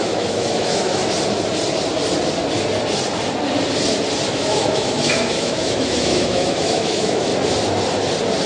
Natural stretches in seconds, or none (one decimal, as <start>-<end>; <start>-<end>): 1.0-4.3; 7.3-8.5